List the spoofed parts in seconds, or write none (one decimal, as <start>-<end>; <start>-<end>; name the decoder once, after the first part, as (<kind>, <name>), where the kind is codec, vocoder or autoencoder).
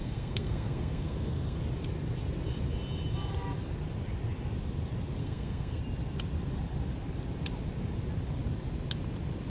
0.0-1.6 (codec, SNAC); 5.2-5.8